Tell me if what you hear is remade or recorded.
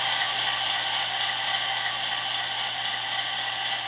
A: recorded